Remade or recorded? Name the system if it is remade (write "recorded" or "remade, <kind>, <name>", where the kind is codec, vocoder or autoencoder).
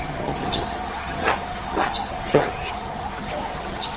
remade, vocoder, HiFi-GAN